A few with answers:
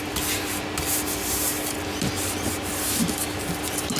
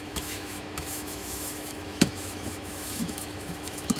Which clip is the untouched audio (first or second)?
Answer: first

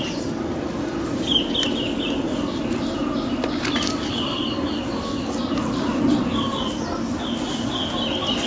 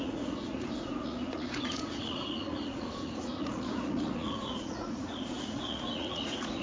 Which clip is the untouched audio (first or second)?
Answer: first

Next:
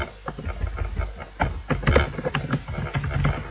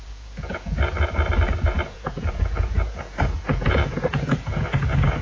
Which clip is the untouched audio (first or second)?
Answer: first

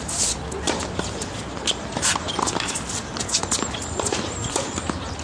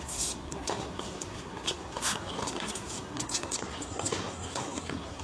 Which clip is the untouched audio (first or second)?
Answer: first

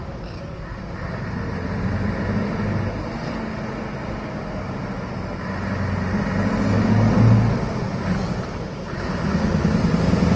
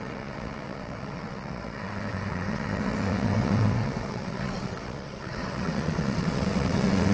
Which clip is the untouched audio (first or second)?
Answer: first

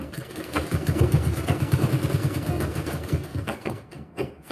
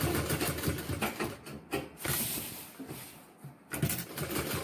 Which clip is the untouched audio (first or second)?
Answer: second